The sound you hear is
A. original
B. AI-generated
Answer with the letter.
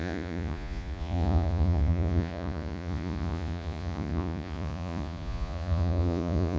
B